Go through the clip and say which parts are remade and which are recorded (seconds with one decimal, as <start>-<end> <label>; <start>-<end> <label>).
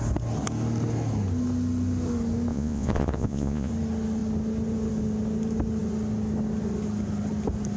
0.0-2.5 recorded; 2.5-3.7 remade; 3.7-7.8 recorded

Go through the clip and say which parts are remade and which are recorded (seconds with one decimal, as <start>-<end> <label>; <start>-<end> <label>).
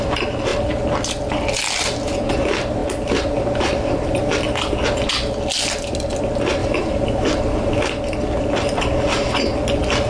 0.0-6.6 recorded; 6.6-7.7 remade; 7.7-10.1 recorded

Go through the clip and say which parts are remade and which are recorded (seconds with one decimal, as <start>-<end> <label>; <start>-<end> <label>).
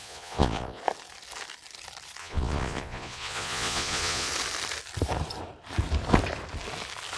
0.0-0.8 remade; 0.8-2.2 recorded; 2.2-4.3 remade; 4.3-7.2 recorded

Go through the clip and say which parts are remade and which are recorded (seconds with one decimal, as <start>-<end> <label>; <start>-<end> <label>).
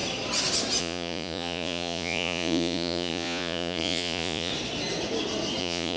0.0-0.8 recorded; 0.8-4.5 remade; 4.5-5.6 recorded; 5.6-6.0 remade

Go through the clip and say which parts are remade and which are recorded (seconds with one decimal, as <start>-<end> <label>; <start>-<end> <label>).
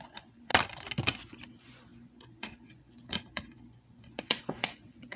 0.0-0.5 remade; 0.5-1.5 recorded; 1.5-5.2 remade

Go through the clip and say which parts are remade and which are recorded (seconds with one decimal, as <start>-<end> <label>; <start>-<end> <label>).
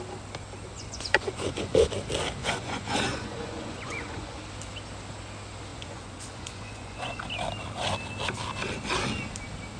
0.0-0.7 recorded; 0.7-1.9 remade; 1.9-2.4 recorded; 2.4-4.4 remade; 4.4-5.7 recorded; 5.7-7.2 remade; 7.2-9.8 recorded